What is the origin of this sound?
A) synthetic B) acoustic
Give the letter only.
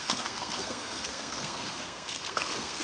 A